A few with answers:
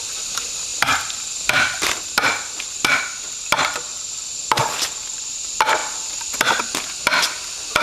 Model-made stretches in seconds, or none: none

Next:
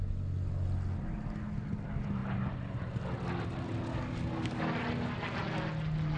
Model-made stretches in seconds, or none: 3.9-4.7

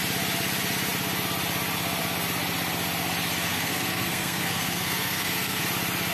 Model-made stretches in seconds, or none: 3.5-5.6

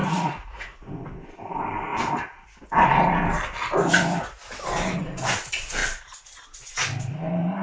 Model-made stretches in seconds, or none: 0.0-0.9